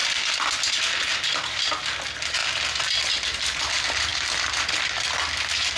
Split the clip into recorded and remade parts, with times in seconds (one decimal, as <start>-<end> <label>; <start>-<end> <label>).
0.0-5.8 recorded